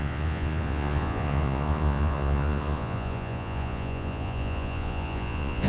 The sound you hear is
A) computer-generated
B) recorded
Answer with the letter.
A